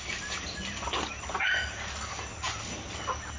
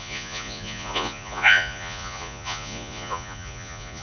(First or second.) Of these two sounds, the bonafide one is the first